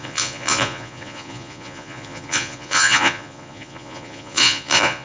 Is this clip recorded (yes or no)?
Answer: no